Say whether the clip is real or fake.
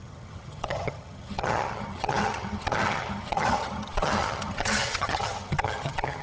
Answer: fake